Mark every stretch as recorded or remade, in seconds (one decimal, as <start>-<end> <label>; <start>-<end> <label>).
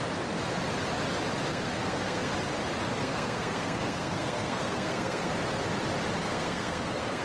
0.0-1.5 recorded; 1.5-2.3 remade; 2.3-3.0 recorded; 3.0-5.3 remade; 5.3-6.2 recorded; 6.2-7.2 remade